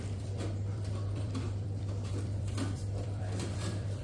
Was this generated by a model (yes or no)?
yes